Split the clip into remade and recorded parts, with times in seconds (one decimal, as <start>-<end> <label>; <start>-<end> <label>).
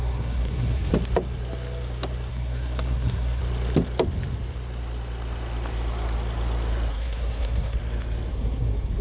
0.0-0.9 remade; 0.9-2.3 recorded; 2.3-3.4 remade; 3.4-6.9 recorded; 6.9-7.8 remade; 7.8-8.3 recorded; 8.3-9.0 remade